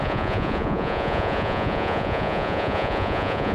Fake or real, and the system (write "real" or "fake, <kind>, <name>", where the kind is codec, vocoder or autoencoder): fake, vocoder, Vocos